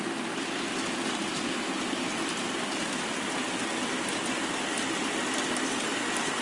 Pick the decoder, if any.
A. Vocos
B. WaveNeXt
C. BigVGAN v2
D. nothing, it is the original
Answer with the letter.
D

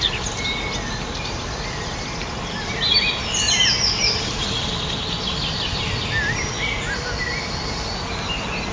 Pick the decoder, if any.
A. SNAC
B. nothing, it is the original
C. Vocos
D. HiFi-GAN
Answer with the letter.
B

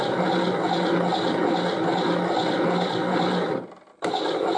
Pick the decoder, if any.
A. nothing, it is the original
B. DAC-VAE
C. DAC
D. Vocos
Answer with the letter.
A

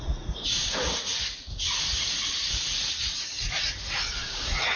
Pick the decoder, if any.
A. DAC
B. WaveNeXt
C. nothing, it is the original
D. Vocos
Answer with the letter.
D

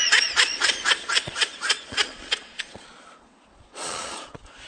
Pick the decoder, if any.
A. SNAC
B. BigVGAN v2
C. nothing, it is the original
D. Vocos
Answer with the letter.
D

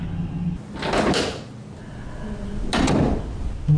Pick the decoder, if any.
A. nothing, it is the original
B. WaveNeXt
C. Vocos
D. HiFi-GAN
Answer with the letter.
A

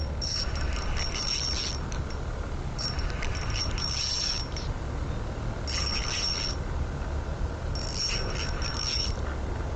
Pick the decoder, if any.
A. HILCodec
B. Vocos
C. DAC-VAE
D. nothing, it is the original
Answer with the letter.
D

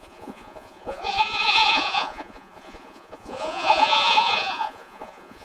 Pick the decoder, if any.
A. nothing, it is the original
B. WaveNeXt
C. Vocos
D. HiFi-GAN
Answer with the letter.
C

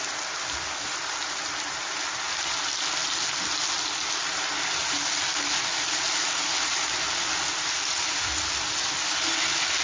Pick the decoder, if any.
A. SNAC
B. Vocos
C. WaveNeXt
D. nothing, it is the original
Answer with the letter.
D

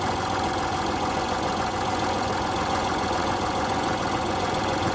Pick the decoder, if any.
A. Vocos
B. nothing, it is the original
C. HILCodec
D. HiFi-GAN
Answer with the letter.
A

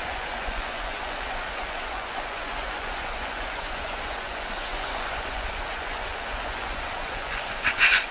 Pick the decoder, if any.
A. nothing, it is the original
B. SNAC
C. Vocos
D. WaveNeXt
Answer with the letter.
C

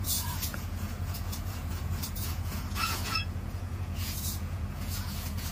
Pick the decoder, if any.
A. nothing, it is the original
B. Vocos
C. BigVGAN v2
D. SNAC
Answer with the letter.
B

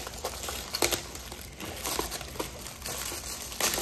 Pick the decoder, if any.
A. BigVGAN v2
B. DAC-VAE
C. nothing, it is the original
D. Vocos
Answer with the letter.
C